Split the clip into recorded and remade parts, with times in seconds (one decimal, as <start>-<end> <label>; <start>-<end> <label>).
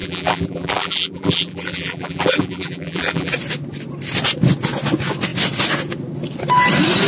0.0-3.3 remade; 3.3-7.1 recorded